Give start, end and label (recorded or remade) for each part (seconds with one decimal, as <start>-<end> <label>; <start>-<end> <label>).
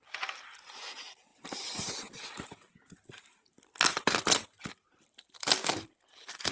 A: 0.0-6.5 recorded